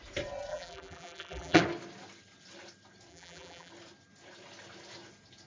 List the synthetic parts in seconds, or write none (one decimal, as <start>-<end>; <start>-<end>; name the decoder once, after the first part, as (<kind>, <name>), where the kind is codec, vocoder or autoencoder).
0.5-1.6 (vocoder, BigVGAN v2); 3.1-3.7